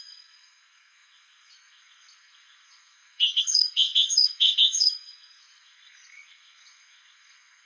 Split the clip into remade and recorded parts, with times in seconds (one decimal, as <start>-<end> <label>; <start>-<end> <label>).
0.0-7.7 remade